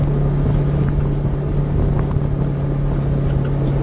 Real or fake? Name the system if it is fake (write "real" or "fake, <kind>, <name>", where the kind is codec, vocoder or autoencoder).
real